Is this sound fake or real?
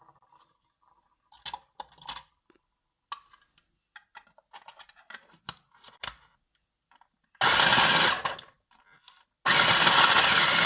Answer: real